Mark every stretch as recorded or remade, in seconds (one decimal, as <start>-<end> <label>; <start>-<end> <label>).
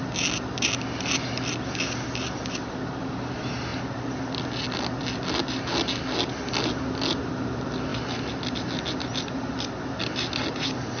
0.0-11.0 recorded